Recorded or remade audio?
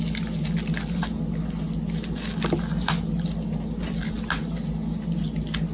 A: recorded